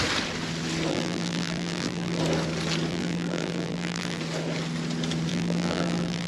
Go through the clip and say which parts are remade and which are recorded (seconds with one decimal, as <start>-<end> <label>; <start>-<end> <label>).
0.0-0.9 recorded; 0.9-2.2 remade; 2.2-2.9 recorded; 2.9-4.2 remade; 4.2-5.3 recorded; 5.3-6.3 remade